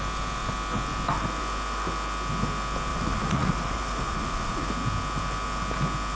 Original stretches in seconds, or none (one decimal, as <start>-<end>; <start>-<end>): 0.0-2.9; 4.7-6.1